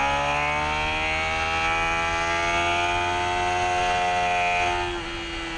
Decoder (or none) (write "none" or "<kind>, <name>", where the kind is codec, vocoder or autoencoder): none